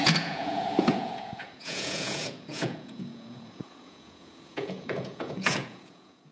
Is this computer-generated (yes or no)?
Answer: yes